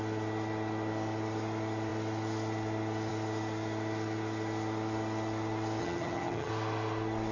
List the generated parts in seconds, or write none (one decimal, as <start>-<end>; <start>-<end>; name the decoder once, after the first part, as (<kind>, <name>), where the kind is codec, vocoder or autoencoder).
5.8-6.5 (vocoder, HiFi-GAN)